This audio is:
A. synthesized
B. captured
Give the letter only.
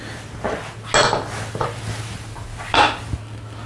B